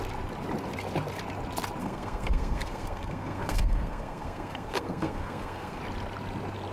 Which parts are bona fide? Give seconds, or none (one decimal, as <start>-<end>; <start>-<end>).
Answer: 0.0-1.8; 5.8-6.7